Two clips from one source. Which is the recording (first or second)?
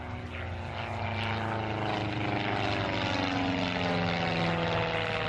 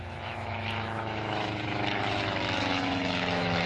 first